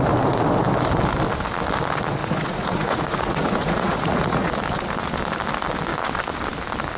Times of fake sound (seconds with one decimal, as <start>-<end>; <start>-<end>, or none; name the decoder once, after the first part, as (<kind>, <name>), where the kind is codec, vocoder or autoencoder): 2.2-4.5 (vocoder, Vocos)